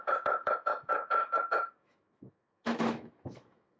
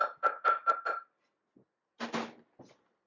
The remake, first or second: first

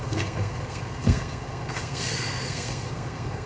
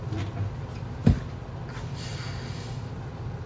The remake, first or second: first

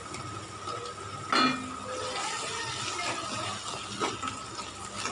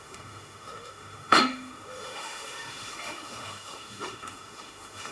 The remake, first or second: second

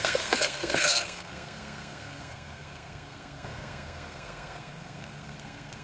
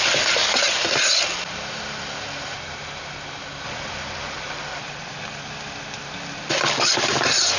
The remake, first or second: first